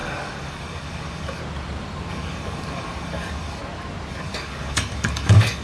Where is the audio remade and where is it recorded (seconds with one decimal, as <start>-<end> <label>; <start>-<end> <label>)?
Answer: 0.0-1.4 remade; 1.4-2.1 recorded; 2.1-3.6 remade; 3.6-4.1 recorded; 4.1-5.6 remade